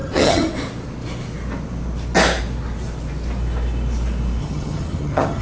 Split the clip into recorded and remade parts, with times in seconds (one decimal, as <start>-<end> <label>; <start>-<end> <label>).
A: 0.0-0.5 remade; 0.5-4.4 recorded; 4.4-5.4 remade